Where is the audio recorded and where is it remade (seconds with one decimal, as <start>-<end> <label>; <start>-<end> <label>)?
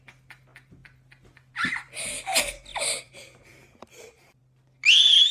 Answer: 0.0-5.3 recorded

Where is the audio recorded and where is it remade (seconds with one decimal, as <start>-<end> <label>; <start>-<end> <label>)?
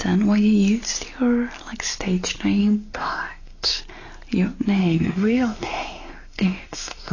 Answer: 0.0-2.6 recorded; 2.6-3.8 remade; 3.8-4.8 recorded; 4.8-7.1 remade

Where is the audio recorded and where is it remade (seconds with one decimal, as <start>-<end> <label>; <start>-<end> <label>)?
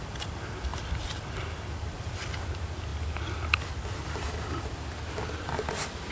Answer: 0.0-6.1 recorded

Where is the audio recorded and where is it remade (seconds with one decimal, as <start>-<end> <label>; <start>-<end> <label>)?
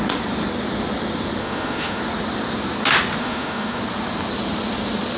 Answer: 0.0-1.4 recorded; 1.4-2.0 remade; 2.0-3.2 recorded; 3.2-3.8 remade; 3.8-5.2 recorded